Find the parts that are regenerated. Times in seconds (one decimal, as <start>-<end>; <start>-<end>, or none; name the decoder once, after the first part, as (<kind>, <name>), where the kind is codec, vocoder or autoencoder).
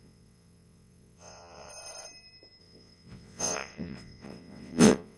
0.0-1.7 (vocoder, WaveNeXt); 2.6-5.2